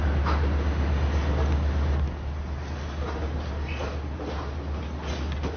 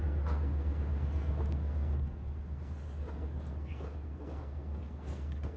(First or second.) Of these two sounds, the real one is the first